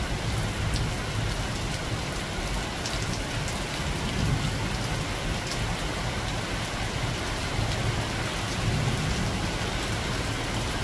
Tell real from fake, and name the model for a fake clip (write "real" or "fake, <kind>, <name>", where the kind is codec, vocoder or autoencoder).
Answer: real